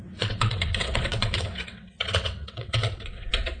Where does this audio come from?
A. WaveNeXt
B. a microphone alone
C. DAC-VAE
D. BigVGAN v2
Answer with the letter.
A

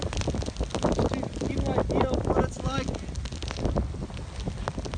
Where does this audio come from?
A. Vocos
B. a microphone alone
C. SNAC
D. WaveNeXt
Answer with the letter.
B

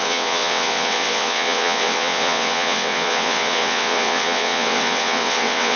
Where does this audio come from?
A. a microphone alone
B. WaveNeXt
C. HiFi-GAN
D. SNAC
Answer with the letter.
B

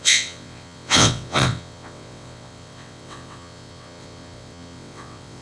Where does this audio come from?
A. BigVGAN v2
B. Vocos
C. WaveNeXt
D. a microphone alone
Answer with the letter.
C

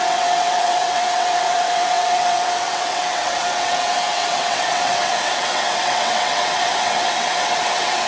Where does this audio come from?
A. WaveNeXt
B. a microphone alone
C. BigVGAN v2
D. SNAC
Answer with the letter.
A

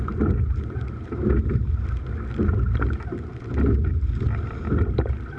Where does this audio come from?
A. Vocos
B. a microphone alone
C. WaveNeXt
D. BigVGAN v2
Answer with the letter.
B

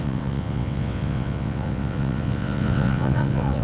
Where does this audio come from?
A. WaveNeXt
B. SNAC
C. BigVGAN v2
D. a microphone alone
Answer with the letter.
A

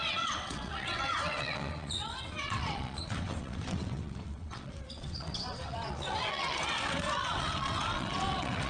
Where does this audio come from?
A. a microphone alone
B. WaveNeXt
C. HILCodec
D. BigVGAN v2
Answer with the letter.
B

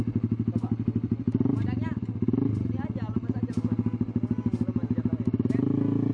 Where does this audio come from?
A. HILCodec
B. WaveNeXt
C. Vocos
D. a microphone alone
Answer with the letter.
D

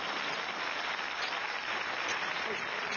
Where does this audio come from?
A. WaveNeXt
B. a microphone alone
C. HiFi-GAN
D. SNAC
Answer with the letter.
B